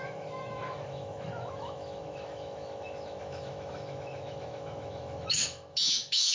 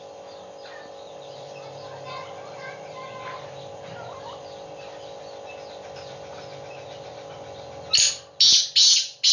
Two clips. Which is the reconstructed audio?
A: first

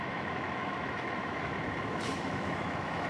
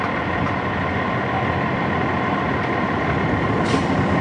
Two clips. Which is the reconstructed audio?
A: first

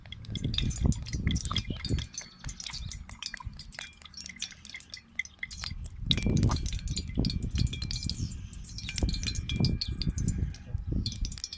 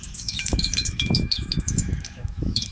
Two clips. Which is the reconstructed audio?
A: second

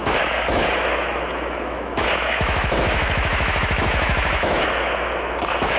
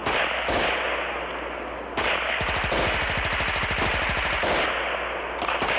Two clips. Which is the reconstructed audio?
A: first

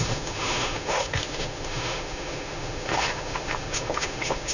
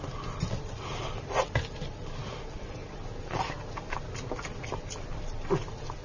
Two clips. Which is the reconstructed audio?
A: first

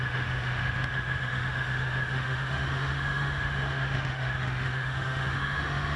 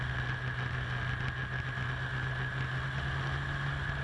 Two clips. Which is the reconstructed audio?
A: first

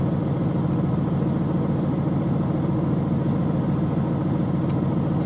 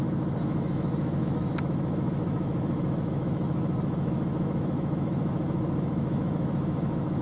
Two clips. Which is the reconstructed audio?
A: second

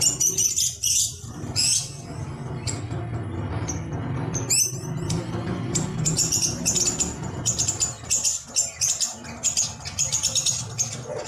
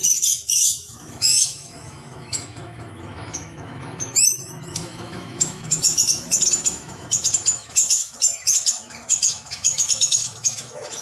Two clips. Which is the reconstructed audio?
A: second